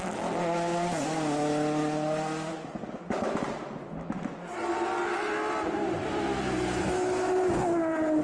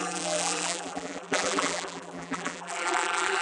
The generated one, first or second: second